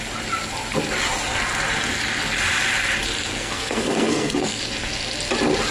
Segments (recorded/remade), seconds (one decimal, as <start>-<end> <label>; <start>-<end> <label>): 0.0-3.3 recorded; 3.3-4.6 remade; 4.6-5.7 recorded